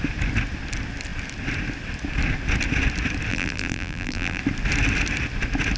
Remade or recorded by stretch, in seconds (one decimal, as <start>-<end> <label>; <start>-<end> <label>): 0.0-3.3 recorded; 3.3-4.4 remade; 4.4-5.8 recorded